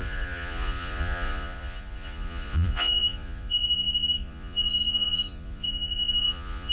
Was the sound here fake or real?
fake